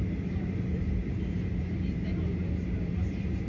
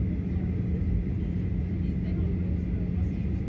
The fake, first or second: first